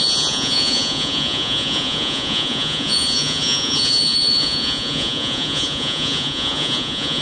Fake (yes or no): yes